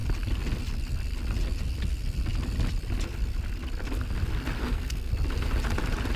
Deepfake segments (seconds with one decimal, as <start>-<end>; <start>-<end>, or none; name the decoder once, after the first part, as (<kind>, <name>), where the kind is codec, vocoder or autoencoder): 4.6-5.1 (codec, SNAC)